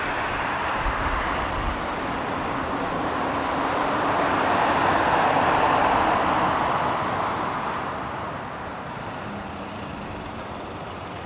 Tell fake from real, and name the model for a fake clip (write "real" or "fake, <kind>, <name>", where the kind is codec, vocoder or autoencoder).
real